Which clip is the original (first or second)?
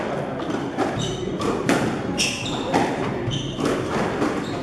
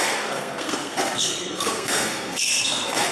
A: first